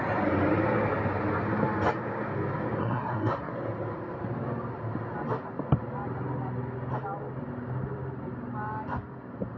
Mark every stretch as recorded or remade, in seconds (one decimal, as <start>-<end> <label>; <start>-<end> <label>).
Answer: 0.0-2.8 recorded; 2.8-3.5 remade; 3.5-9.6 recorded